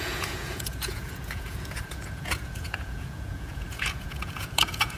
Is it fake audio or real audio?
fake